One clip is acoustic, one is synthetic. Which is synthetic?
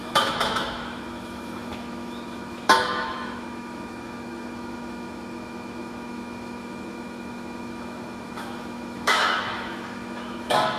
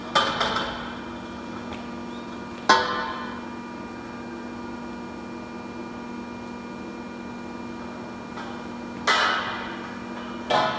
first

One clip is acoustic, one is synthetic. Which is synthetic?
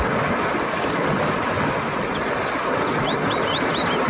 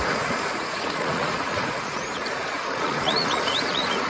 second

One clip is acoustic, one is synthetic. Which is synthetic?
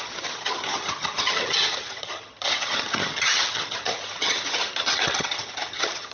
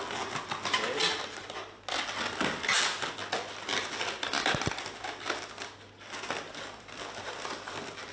first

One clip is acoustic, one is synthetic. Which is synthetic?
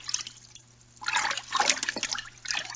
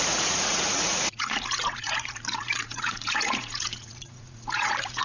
second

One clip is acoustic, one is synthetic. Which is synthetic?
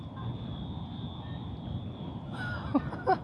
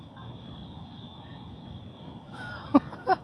second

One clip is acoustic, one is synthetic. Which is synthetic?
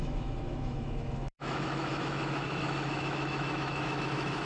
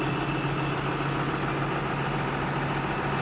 first